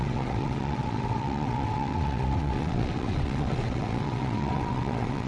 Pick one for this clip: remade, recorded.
remade